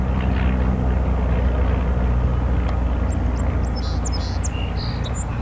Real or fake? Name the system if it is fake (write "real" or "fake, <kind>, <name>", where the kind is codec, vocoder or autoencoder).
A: real